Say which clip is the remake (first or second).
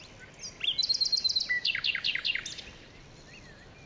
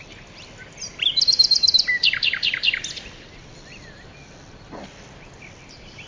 second